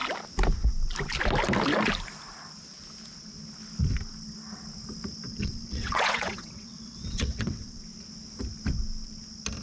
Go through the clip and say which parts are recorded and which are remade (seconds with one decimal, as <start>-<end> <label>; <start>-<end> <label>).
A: 0.0-5.3 recorded; 5.3-7.8 remade; 7.8-9.6 recorded